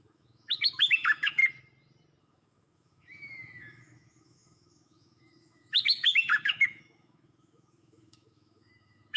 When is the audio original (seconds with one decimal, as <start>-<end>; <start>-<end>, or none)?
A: 1.4-2.2